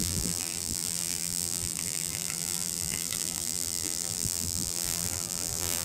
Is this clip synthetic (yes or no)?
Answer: yes